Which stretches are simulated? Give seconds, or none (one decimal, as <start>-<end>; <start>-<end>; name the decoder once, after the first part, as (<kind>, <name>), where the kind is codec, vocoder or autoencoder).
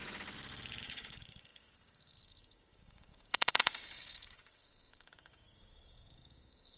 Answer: 0.8-6.8 (codec, DAC)